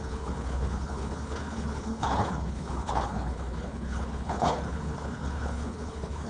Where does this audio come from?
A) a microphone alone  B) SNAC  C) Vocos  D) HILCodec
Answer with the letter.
D